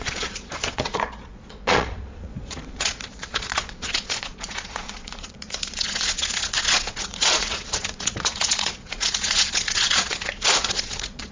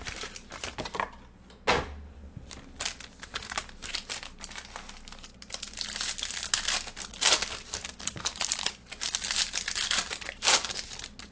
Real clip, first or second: second